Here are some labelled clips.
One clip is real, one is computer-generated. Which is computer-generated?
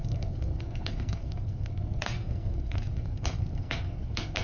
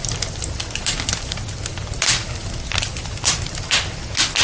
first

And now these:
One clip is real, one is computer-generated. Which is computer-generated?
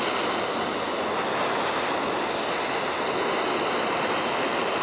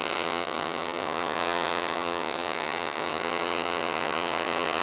second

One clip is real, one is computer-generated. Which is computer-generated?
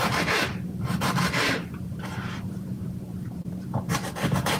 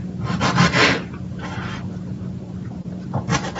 first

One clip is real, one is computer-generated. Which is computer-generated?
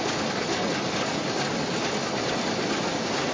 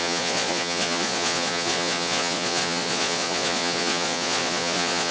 second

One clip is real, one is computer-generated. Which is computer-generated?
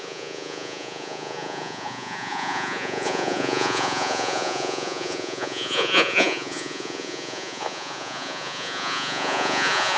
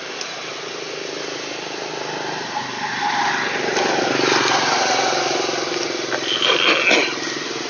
first